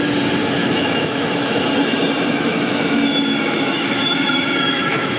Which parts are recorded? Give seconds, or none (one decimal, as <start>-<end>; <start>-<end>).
0.0-0.6; 1.6-2.5